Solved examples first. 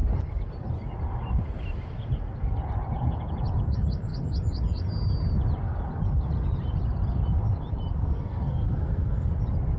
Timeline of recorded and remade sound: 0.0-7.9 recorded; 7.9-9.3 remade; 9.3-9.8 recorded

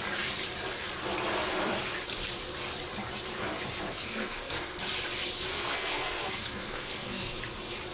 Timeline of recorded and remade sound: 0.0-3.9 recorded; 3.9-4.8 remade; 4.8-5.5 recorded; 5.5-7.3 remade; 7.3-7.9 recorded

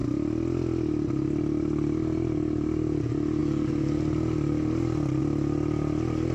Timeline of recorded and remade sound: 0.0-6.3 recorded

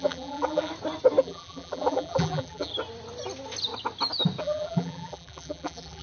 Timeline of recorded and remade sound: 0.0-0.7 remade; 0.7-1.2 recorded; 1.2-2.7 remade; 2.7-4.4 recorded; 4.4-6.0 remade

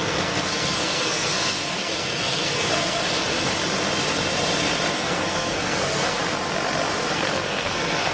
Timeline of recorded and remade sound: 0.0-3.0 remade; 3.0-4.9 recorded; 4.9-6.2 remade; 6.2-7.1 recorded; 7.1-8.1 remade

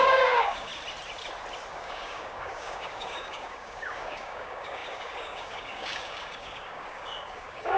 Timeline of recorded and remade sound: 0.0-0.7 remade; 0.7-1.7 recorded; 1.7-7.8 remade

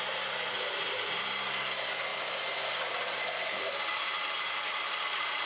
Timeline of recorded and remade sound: 0.0-2.1 recorded; 2.1-5.5 remade

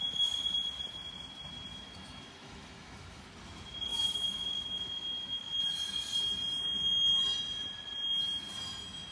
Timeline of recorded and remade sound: 0.0-1.7 recorded; 1.7-3.2 remade; 3.2-3.9 recorded; 3.9-5.6 remade; 5.6-9.1 recorded